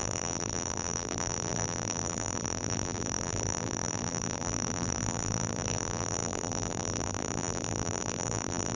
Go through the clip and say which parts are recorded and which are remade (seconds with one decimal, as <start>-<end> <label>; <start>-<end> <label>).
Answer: 0.0-8.7 remade